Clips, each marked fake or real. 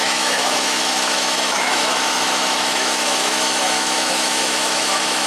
fake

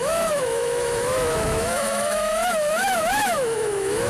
fake